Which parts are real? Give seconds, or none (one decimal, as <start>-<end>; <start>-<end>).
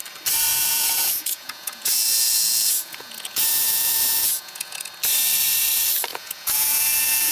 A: 0.0-0.5; 4.9-6.1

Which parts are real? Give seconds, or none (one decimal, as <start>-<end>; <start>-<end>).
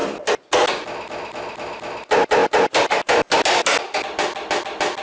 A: 0.0-5.0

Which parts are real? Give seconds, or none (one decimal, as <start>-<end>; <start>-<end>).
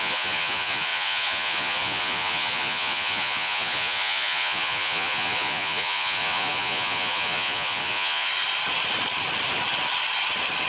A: 8.3-10.7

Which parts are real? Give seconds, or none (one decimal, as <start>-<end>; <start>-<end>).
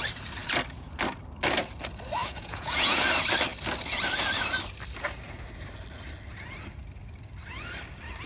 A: 0.0-2.2; 3.0-8.3